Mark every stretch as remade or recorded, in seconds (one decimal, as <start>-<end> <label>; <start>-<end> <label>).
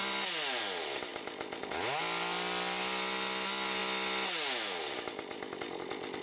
0.0-6.2 recorded